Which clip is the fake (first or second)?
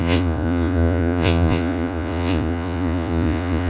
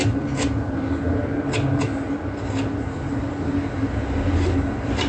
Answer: first